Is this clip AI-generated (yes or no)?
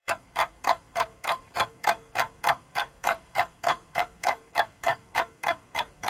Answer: yes